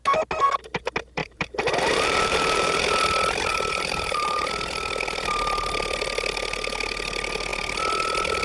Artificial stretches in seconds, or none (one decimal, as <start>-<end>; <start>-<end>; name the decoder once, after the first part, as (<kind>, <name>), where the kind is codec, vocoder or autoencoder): 1.2-2.8 (vocoder, BigVGAN v2); 3.5-4.5